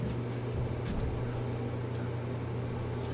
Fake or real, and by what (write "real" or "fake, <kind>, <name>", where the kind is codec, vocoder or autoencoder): real